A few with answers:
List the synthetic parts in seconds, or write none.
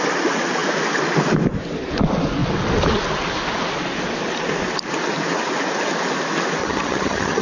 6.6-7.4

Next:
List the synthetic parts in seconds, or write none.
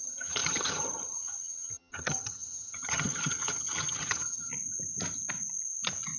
0.0-4.5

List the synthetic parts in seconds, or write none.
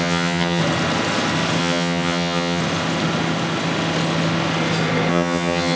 0.0-0.6; 1.6-2.6; 5.1-5.8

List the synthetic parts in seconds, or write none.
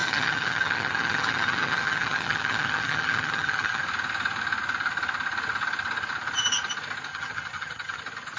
0.0-3.8; 7.1-8.0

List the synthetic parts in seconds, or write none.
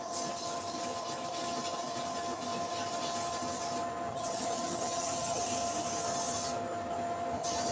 4.1-5.4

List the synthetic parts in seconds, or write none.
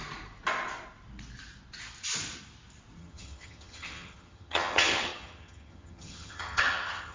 3.0-7.1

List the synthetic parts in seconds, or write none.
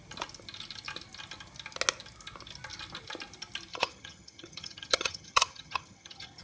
3.7-6.4